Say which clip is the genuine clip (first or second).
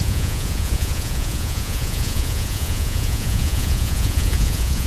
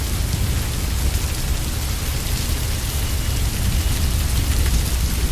second